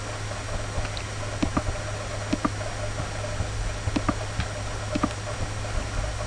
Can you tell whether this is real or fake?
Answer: real